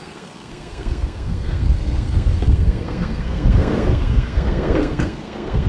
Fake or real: fake